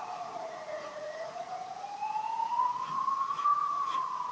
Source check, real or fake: fake